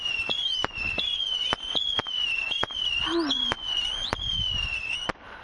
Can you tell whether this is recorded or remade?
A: remade